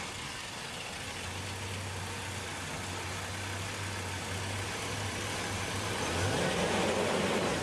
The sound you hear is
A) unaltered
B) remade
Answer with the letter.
A